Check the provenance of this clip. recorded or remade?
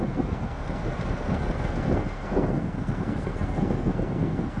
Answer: remade